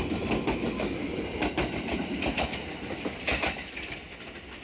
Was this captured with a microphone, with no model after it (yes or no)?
yes